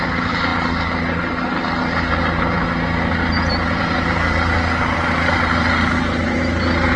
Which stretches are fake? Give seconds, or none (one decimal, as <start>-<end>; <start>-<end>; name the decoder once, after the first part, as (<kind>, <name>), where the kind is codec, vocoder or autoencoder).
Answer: none